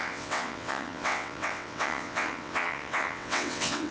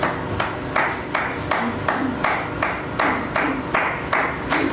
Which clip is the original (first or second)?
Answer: second